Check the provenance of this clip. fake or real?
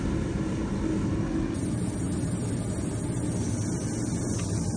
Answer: real